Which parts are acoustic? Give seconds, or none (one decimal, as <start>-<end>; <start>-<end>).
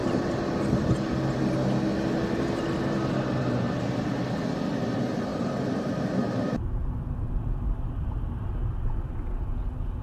0.6-5.3; 8.5-10.0